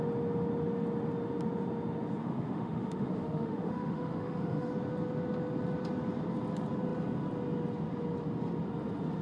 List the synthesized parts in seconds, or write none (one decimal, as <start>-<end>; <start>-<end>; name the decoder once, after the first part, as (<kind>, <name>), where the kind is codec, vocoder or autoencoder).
2.2-4.7 (autoencoder, DAC-VAE)